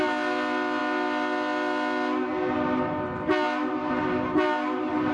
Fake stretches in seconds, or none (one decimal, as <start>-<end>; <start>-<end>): none